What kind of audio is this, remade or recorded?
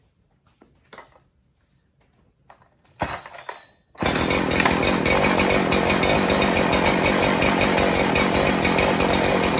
recorded